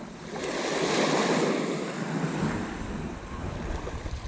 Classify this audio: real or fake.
real